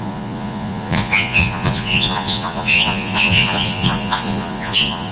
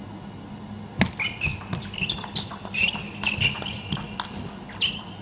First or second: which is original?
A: second